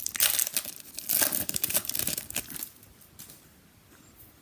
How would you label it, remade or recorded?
recorded